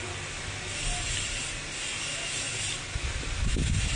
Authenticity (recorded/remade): recorded